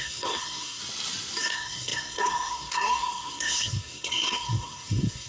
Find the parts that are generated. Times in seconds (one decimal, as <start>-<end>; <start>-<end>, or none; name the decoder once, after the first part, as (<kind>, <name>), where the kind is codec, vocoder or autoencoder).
0.0-0.8 (codec, SNAC); 1.4-5.3